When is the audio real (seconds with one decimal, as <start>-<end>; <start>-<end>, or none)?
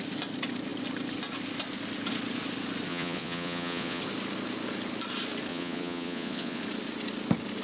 0.0-2.9; 4.0-5.5; 6.6-7.6